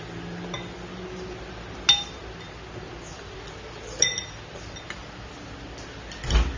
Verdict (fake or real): real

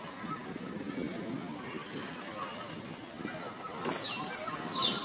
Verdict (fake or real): real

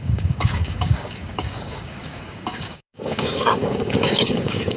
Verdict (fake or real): fake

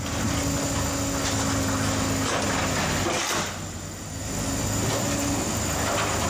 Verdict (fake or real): real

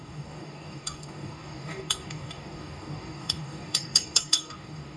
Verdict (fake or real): fake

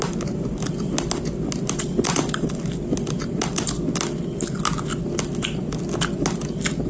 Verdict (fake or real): real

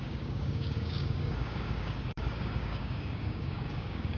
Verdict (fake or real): fake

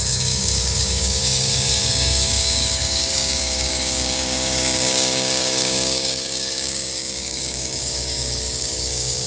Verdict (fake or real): fake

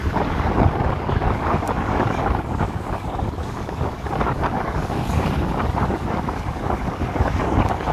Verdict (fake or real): fake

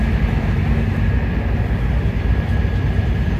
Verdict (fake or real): real